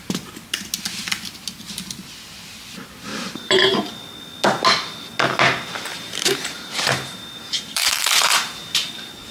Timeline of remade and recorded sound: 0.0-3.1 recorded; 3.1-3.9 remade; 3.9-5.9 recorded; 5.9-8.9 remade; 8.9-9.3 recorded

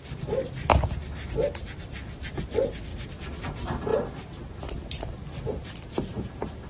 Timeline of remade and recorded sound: 0.0-0.7 remade; 0.7-2.0 recorded; 2.0-2.9 remade; 2.9-3.4 recorded; 3.4-6.7 remade

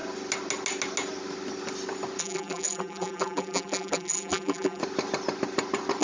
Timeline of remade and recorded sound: 0.0-2.2 recorded; 2.2-4.8 remade; 4.8-6.0 recorded

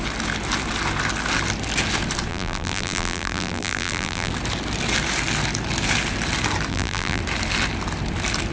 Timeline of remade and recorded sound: 0.0-2.3 recorded; 2.3-4.3 remade; 4.3-6.7 recorded; 6.7-7.2 remade; 7.2-8.5 recorded

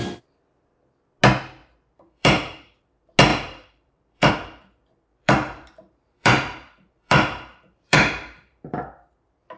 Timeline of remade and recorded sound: 0.0-1.6 recorded; 1.6-2.8 remade; 2.8-3.3 recorded; 3.3-4.3 remade; 4.3-5.1 recorded; 5.1-8.8 remade; 8.8-9.6 recorded